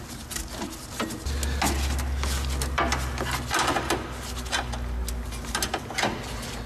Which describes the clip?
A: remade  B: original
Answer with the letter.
B